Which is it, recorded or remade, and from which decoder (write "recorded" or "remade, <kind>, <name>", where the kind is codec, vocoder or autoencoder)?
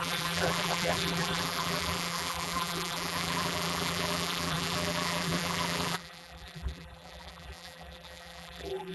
remade, vocoder, BigVGAN v2